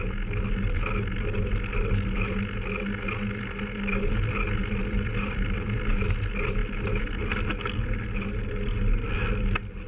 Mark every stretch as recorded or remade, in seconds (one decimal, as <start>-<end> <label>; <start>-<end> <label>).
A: 0.0-9.9 recorded